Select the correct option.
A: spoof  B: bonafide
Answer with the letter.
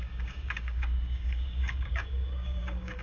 A